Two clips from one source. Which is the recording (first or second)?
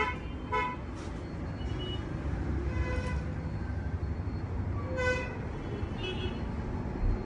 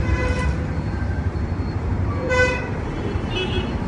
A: first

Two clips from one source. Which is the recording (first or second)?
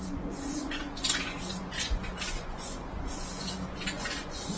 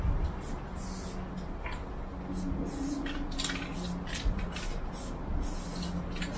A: second